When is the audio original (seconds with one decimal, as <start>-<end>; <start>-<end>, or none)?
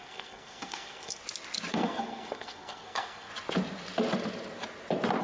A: 1.2-1.7; 3.3-5.2